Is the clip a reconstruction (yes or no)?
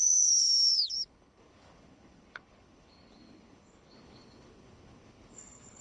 yes